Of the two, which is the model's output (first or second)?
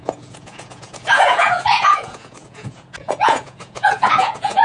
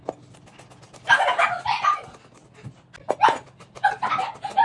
first